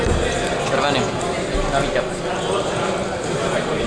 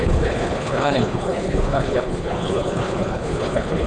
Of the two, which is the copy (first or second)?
second